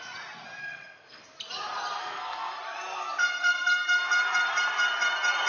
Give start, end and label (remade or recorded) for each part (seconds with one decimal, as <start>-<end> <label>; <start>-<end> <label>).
0.0-0.6 recorded; 0.6-1.2 remade; 1.2-2.0 recorded; 2.0-2.6 remade; 2.6-5.5 recorded